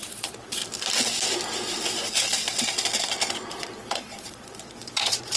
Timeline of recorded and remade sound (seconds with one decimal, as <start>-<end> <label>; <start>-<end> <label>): 0.0-0.6 remade; 0.6-3.5 recorded; 3.5-5.4 remade